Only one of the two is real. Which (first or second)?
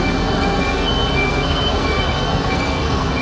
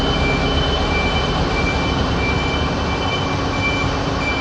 second